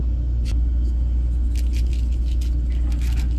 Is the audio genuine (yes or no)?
yes